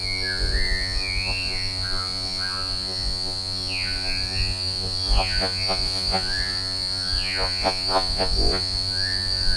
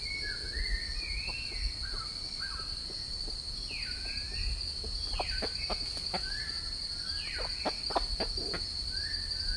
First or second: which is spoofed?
first